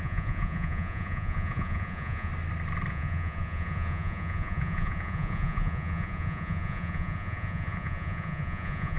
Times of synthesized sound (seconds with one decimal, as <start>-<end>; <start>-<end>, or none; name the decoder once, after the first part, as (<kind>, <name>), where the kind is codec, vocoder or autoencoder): 0.0-2.3 (vocoder, Vocos); 2.9-9.0